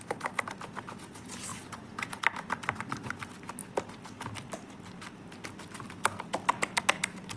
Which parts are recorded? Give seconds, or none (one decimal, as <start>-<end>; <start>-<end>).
0.0-1.5; 2.2-7.4